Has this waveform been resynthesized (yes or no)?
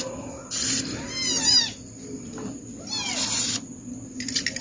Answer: no